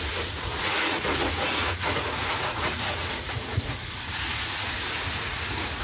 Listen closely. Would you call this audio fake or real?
fake